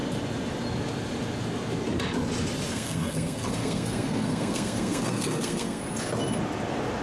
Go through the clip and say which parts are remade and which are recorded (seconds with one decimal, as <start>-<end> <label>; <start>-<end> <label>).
0.0-2.7 recorded; 2.7-5.8 remade; 5.8-7.0 recorded